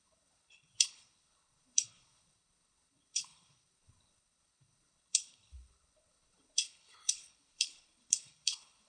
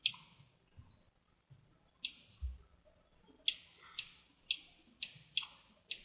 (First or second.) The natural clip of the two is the second